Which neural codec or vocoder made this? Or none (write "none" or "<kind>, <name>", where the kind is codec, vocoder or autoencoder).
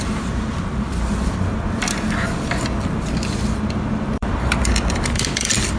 vocoder, BigVGAN v2